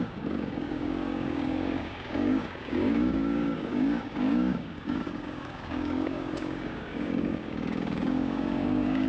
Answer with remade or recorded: remade